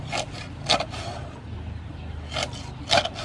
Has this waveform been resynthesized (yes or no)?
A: no